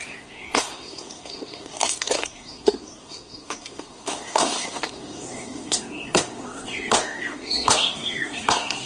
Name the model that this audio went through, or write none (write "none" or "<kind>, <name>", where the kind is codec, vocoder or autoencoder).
codec, SNAC